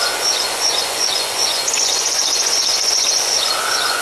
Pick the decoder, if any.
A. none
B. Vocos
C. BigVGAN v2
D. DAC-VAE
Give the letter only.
B